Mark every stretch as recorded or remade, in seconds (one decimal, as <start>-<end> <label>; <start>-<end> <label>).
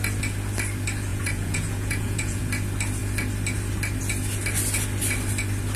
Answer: 0.0-1.1 recorded; 1.1-2.4 remade; 2.4-5.8 recorded